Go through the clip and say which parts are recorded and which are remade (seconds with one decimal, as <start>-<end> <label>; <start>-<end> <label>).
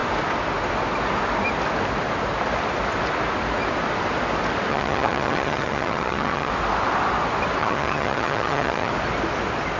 0.0-4.7 recorded; 4.7-6.5 remade; 6.5-7.6 recorded; 7.6-8.9 remade; 8.9-9.8 recorded